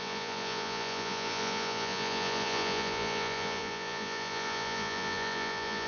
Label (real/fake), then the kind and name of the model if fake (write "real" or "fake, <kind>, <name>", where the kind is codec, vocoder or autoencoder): fake, vocoder, Vocos